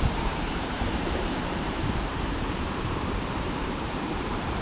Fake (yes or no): yes